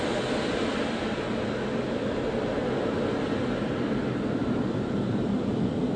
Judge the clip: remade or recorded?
recorded